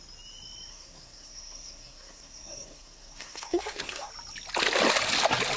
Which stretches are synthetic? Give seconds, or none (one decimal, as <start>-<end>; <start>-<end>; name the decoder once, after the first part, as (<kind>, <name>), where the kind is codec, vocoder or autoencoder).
0.7-4.1 (codec, SNAC)

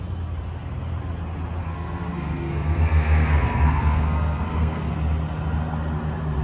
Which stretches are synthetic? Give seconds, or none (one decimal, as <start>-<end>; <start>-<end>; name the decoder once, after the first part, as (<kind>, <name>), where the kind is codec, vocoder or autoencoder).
1.6-4.9 (codec, SNAC)

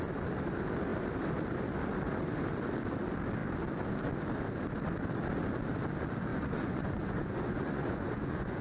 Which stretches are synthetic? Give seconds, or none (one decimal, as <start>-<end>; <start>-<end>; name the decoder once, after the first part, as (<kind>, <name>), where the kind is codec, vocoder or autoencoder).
6.3-8.6 (vocoder, Vocos)

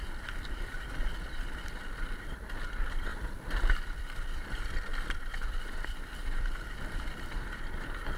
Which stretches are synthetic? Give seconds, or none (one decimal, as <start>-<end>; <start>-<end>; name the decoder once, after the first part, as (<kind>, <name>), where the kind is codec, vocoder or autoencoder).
none

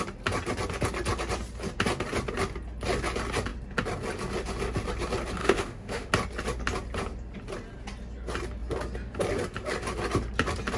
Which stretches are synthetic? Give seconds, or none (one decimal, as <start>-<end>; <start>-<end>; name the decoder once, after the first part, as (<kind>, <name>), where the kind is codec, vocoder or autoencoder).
5.4-6.1 (autoencoder, DAC-VAE)

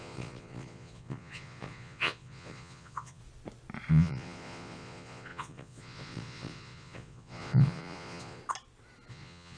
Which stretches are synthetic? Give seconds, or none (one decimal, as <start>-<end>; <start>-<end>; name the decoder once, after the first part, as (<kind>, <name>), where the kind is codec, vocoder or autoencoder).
0.0-3.2 (vocoder, Vocos); 3.9-8.4; 9.1-9.6

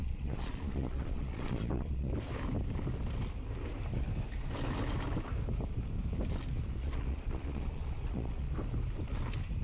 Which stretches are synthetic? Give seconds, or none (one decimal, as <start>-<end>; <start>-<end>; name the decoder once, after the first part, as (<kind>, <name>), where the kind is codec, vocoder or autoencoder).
0.0-2.1 (vocoder, Vocos); 6.8-8.5

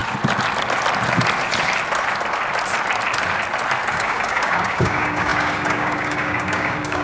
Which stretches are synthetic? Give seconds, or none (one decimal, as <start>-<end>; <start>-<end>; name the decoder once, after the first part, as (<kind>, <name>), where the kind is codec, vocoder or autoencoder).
3.9-7.0 (codec, DAC)